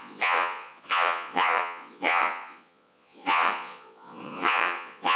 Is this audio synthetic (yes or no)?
yes